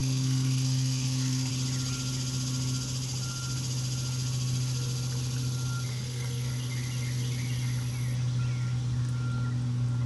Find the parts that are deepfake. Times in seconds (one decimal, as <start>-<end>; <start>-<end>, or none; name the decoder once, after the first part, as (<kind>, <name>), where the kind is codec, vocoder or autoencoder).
0.0-1.5 (codec, SNAC); 5.9-6.5